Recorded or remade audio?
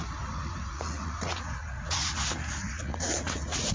remade